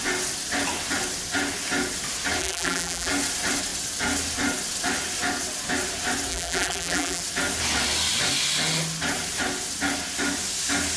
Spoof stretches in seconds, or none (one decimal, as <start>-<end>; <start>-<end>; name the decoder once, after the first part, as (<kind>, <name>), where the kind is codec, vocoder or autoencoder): 2.4-3.1 (vocoder, BigVGAN v2); 6.3-7.2